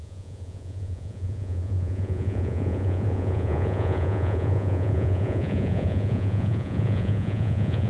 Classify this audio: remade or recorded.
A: remade